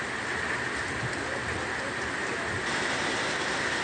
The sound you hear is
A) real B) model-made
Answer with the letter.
A